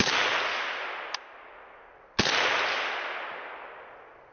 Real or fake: real